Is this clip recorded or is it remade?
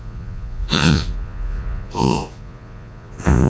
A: remade